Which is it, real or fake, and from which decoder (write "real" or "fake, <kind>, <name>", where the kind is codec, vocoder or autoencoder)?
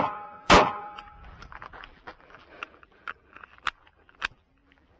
fake, vocoder, BigVGAN v2